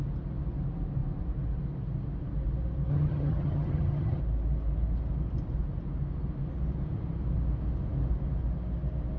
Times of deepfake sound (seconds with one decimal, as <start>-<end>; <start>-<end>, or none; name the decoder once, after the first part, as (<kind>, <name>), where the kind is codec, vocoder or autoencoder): 2.9-4.2 (vocoder, HiFi-GAN)